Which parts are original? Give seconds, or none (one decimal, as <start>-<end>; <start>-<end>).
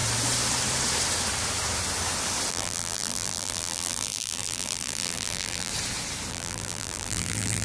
0.0-2.5; 5.7-6.3